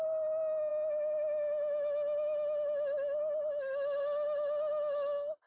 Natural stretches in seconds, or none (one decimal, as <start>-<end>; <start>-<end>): 0.0-5.5